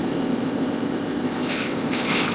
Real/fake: fake